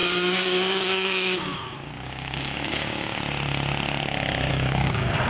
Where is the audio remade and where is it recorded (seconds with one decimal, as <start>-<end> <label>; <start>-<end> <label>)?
0.0-3.2 remade; 3.2-4.5 recorded; 4.5-5.3 remade